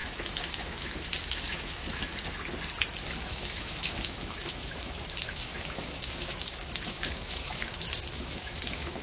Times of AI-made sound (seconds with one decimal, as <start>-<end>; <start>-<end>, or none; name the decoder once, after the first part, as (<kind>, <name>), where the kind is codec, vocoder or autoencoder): 0.0-2.1 (autoencoder, DAC-VAE); 3.2-9.0